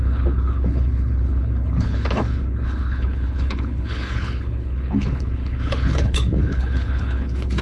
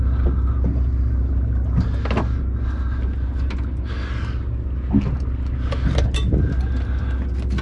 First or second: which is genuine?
second